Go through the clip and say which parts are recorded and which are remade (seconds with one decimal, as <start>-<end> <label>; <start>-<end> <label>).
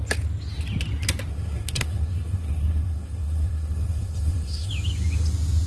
0.0-1.3 recorded; 1.3-4.7 remade; 4.7-5.7 recorded